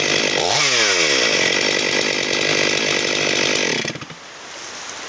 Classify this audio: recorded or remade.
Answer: recorded